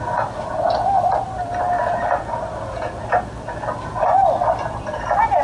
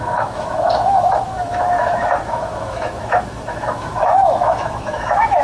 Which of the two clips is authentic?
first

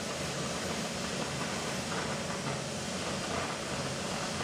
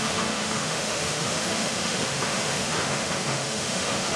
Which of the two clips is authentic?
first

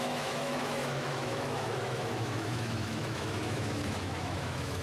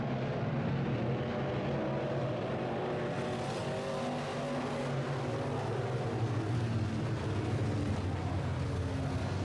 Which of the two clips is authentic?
second